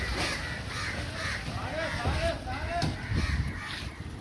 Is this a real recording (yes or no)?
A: yes